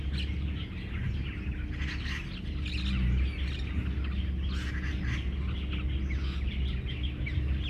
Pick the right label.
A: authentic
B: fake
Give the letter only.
A